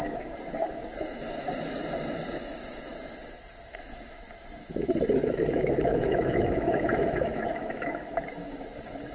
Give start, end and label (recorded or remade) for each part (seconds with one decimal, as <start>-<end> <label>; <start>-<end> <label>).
0.0-2.9 remade; 2.9-3.7 recorded; 3.7-9.1 remade